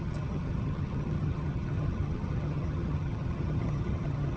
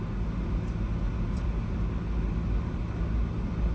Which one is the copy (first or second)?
first